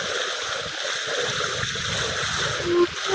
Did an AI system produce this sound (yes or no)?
no